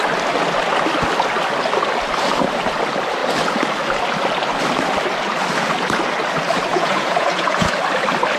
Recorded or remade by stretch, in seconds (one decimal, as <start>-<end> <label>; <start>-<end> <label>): 0.0-6.7 recorded; 6.7-7.7 remade; 7.7-8.4 recorded